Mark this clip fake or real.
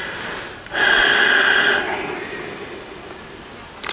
real